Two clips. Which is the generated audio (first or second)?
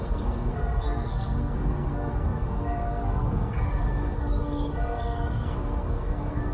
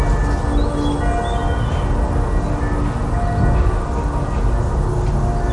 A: first